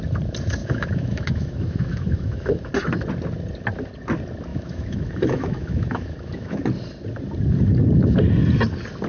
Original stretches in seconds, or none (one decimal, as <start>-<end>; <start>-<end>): 0.0-0.6; 2.7-4.5; 6.6-9.1